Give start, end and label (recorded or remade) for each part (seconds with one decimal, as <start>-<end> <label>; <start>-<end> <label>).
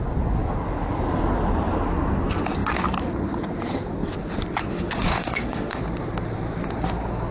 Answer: 0.0-4.7 recorded; 4.7-5.8 remade; 5.8-7.3 recorded